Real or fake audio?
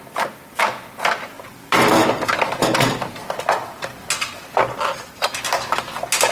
real